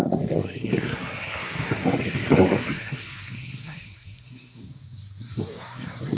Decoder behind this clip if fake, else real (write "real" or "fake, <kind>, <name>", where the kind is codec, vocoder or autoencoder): fake, codec, SNAC